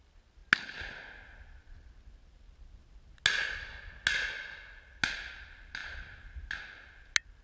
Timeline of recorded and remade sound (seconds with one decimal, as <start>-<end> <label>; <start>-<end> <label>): 0.0-7.4 recorded